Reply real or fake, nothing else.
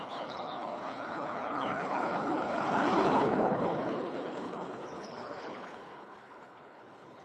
fake